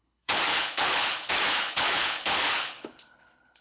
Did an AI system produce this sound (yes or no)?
yes